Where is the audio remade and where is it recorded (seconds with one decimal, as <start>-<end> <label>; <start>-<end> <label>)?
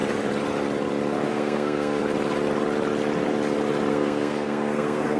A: 0.0-1.3 recorded; 1.3-2.0 remade; 2.0-3.9 recorded; 3.9-5.2 remade